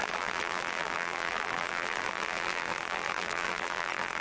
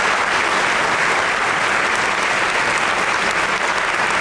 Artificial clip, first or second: first